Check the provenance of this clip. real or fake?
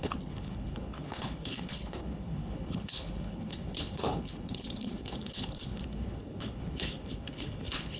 fake